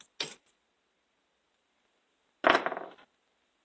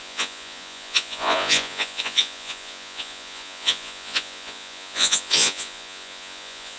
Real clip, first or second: first